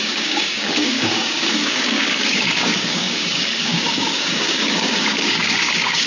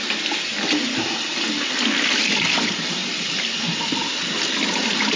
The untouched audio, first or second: second